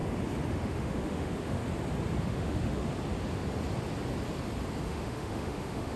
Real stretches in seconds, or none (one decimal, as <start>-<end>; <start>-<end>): 0.0-0.5; 1.6-2.2; 2.9-4.8